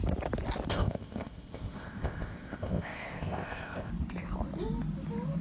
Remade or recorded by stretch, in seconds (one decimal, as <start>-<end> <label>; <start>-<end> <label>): 0.0-0.7 recorded; 0.7-3.9 remade; 3.9-5.4 recorded